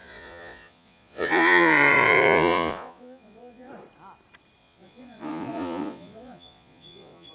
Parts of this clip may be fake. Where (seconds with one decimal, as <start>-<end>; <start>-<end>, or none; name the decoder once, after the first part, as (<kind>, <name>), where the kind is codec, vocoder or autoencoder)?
0.0-3.7 (vocoder, Vocos); 4.6-7.3